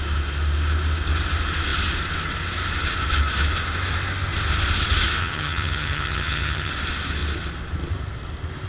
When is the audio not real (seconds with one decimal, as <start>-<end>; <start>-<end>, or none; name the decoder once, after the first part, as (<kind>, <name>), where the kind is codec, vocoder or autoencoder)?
5.2-6.7 (vocoder, HiFi-GAN)